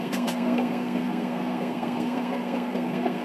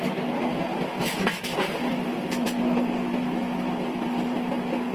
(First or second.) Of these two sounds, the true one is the second